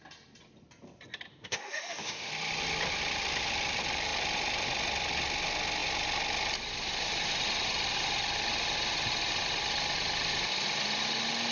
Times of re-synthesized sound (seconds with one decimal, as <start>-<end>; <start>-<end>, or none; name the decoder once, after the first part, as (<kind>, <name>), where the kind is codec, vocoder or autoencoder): 1.3-2.3 (autoencoder, DAC-VAE)